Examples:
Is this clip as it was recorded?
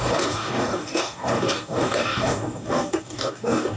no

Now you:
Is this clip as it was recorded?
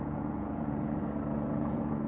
no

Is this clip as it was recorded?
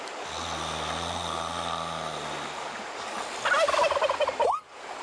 yes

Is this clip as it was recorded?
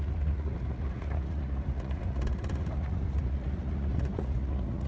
no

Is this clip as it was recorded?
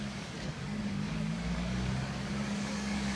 no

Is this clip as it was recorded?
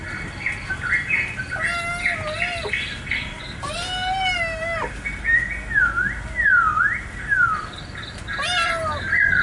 yes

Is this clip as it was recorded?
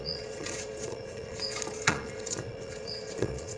no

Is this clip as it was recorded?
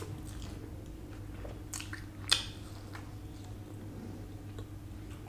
yes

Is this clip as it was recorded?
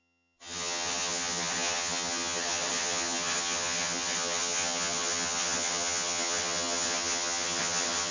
no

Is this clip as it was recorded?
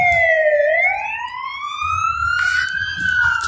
yes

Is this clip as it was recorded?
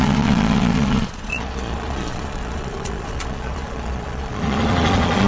no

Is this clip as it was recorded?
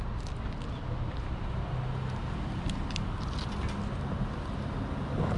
yes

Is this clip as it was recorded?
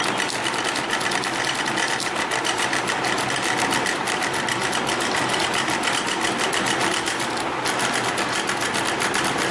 yes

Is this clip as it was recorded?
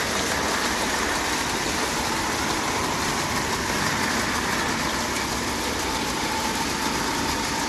yes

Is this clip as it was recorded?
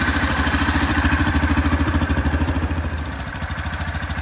no